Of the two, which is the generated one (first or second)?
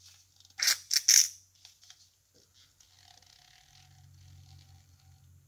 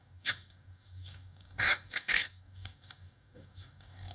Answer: second